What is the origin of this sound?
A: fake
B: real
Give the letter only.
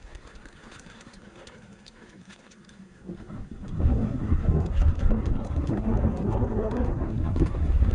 A